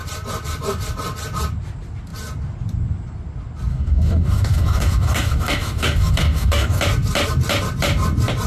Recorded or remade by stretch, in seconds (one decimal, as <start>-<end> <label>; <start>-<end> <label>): 0.0-3.7 recorded; 3.7-6.8 remade; 6.8-8.5 recorded